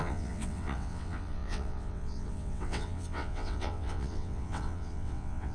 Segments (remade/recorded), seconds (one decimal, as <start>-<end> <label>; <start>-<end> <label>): 0.0-5.5 remade